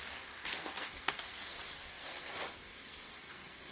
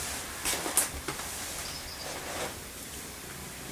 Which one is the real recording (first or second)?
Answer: second